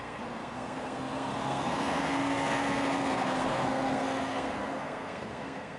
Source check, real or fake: fake